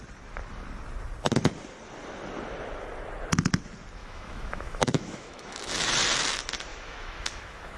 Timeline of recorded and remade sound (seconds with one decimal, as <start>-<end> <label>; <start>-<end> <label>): 0.0-4.0 recorded; 4.0-5.9 remade; 5.9-6.7 recorded; 6.7-7.8 remade